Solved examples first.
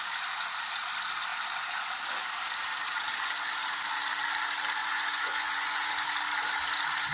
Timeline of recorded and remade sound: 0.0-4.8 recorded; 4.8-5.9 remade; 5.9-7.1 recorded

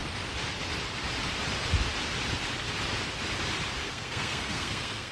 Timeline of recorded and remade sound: 0.0-3.8 recorded; 3.8-5.1 remade

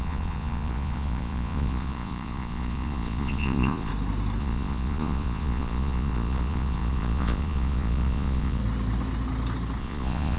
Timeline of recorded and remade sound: 0.0-3.9 remade; 3.9-4.4 recorded; 4.4-8.6 remade; 8.6-9.8 recorded; 9.8-10.4 remade

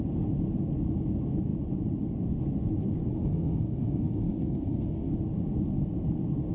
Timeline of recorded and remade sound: 0.0-3.1 recorded; 3.1-5.1 remade; 5.1-6.5 recorded

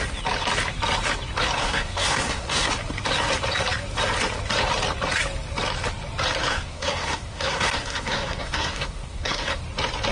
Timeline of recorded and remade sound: 0.0-1.6 recorded; 1.6-2.7 remade; 2.7-6.5 recorded; 6.5-9.6 remade; 9.6-10.1 recorded

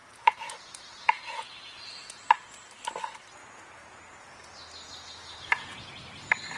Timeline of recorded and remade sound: 0.0-2.7 remade; 2.7-3.4 recorded; 3.4-4.2 remade; 4.2-5.2 recorded; 5.2-5.9 remade; 5.9-6.6 recorded

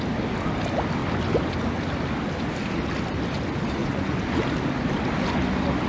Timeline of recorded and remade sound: 0.0-3.8 recorded; 3.8-4.4 remade; 4.4-5.9 recorded